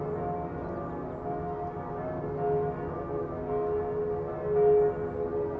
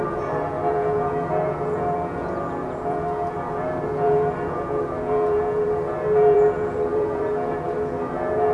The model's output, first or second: second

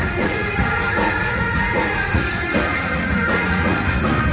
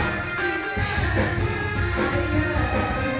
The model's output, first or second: first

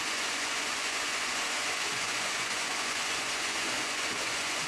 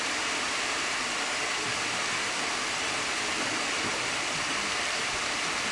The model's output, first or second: first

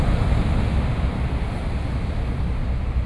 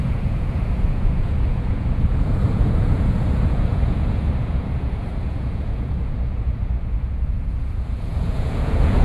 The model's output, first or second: second